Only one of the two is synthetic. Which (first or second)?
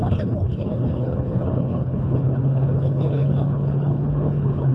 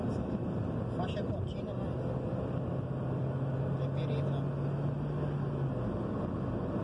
first